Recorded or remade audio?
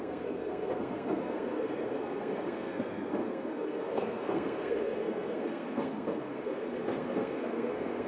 remade